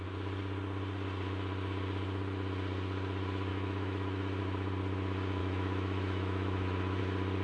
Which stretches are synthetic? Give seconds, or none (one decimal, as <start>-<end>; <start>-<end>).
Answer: 3.5-4.4; 5.4-7.0